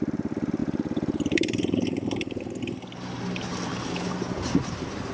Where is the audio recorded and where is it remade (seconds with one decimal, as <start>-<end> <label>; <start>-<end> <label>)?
0.0-0.6 recorded; 0.6-2.6 remade; 2.6-3.5 recorded; 3.5-5.1 remade